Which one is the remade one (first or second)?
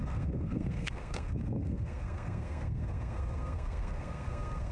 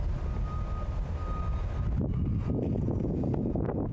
first